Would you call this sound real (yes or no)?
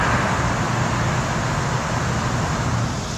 yes